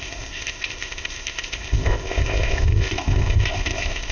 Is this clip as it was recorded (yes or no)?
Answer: no